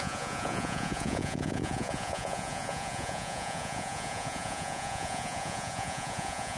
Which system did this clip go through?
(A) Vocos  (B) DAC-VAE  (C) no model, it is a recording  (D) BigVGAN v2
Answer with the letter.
A